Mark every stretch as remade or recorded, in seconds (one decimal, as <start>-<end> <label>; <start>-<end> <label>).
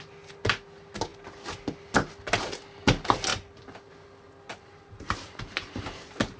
0.0-4.5 recorded; 4.5-6.4 remade